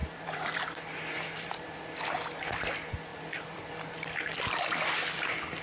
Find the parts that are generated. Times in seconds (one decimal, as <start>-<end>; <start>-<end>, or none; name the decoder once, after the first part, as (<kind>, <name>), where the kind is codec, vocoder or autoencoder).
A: 0.0-1.7 (vocoder, BigVGAN v2); 3.1-5.0